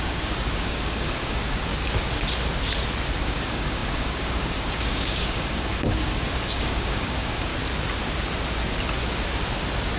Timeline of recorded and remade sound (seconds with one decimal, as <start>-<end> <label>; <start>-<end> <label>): 0.0-1.7 remade; 1.7-3.2 recorded; 3.2-7.5 remade; 7.5-10.0 recorded